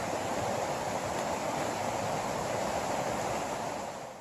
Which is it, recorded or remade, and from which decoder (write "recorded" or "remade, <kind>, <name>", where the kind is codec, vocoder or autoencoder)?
recorded